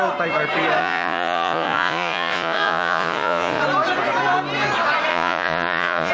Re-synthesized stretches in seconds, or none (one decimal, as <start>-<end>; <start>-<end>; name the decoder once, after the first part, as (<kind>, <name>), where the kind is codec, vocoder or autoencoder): 0.8-3.6 (vocoder, Vocos); 5.1-6.1